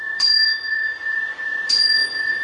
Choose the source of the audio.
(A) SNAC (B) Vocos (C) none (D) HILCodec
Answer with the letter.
B